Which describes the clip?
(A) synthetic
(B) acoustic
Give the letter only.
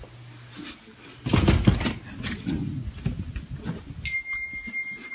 B